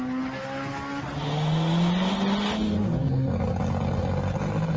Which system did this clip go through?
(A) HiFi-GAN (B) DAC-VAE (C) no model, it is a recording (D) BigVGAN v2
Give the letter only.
C